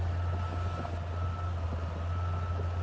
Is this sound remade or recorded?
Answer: recorded